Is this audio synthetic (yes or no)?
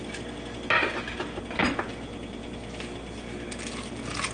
no